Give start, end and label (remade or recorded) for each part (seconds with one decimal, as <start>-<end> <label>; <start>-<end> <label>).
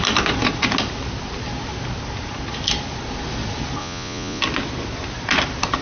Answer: 0.0-3.8 recorded; 3.8-4.4 remade; 4.4-5.8 recorded